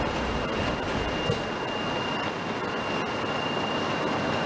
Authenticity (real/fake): real